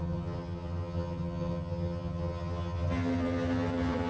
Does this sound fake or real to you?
fake